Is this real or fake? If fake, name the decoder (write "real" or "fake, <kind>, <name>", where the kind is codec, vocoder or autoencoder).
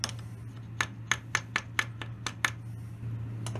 real